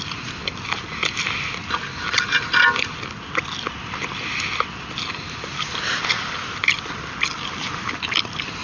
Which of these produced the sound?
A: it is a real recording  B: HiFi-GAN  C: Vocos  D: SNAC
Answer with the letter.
A